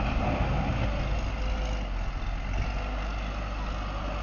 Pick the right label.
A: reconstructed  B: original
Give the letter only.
B